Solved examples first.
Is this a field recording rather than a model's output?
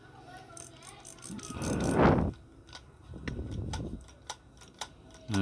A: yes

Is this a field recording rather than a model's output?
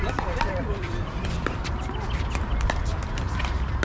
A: no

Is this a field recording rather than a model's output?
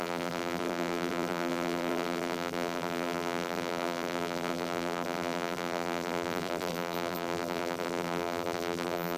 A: no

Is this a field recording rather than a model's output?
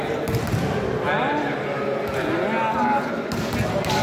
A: yes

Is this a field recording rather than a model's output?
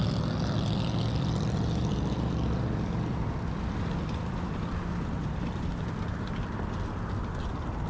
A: no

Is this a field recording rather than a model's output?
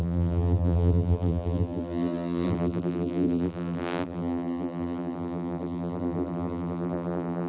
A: no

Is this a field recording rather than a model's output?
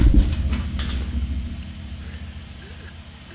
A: yes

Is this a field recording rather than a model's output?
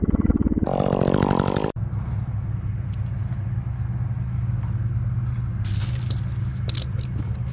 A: yes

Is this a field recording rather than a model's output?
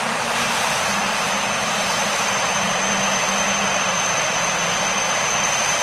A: no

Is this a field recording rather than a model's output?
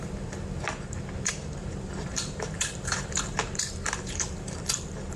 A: no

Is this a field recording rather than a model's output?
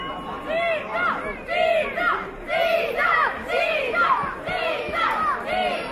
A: yes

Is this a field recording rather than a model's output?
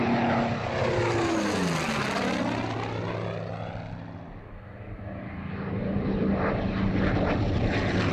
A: yes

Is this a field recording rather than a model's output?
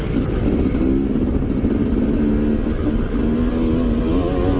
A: yes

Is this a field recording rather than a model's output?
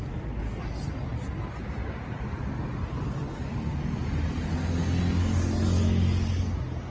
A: yes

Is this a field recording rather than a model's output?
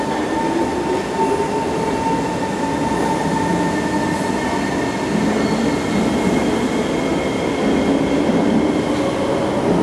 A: yes